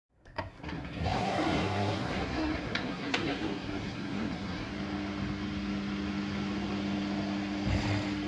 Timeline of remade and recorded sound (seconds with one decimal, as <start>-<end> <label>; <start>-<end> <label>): 0.0-4.7 remade; 4.7-8.3 recorded